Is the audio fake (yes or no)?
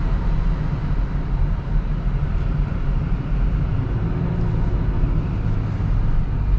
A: no